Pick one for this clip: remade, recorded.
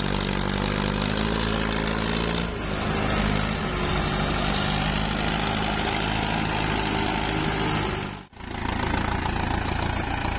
recorded